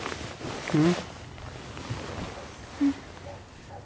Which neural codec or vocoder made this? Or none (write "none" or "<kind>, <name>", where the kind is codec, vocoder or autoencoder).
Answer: none